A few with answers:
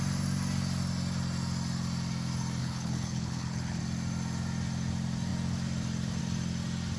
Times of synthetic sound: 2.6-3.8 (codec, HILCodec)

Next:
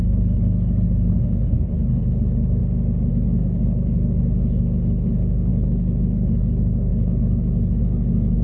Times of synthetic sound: 0.0-2.6 (codec, HILCodec); 3.1-8.4

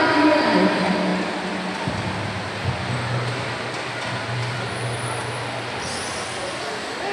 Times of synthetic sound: none

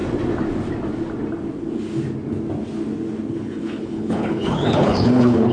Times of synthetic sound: 3.3-5.5 (codec, HILCodec)